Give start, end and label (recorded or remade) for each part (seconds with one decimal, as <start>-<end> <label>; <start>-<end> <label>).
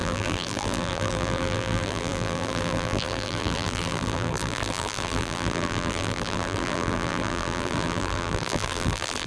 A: 0.0-9.3 remade